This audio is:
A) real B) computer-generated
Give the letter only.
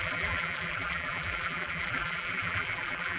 B